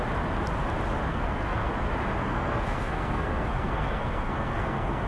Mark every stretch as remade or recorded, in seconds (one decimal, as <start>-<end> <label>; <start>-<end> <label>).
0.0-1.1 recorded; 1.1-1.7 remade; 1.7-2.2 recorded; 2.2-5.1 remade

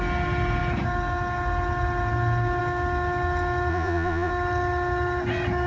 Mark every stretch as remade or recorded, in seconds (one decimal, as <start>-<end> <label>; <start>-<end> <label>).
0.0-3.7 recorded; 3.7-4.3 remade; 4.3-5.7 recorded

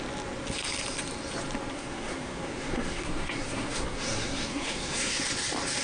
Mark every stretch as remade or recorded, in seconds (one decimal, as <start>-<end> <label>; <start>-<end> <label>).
0.0-1.7 recorded; 1.7-5.2 remade; 5.2-5.8 recorded

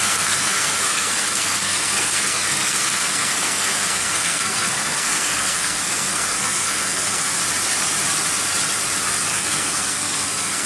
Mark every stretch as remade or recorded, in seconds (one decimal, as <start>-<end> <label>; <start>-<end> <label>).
0.0-7.4 remade; 7.4-9.3 recorded; 9.3-10.7 remade

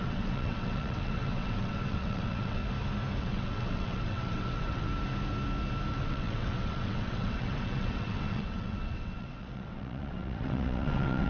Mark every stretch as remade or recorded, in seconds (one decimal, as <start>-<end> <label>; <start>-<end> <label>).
0.0-2.6 remade; 2.6-3.2 recorded; 3.2-4.9 remade; 4.9-6.0 recorded; 6.0-11.3 remade

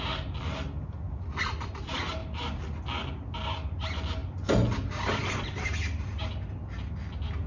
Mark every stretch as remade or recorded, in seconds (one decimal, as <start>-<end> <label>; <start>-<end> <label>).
0.0-7.5 recorded

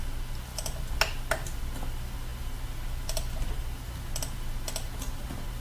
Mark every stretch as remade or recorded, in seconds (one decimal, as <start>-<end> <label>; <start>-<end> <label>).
0.0-5.6 recorded

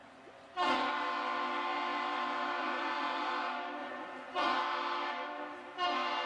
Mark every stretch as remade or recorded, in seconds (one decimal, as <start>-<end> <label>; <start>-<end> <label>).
0.0-0.9 remade; 0.9-2.6 recorded; 2.6-3.3 remade; 3.3-3.8 recorded; 3.8-4.6 remade; 4.6-6.3 recorded